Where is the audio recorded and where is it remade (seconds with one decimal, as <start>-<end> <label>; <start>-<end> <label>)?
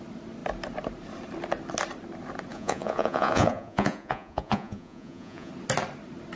0.0-2.5 recorded; 2.5-5.5 remade; 5.5-6.4 recorded